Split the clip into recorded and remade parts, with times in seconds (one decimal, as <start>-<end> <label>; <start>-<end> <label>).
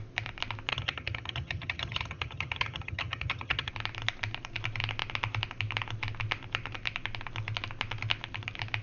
0.0-0.7 recorded; 0.7-3.7 remade; 3.7-8.8 recorded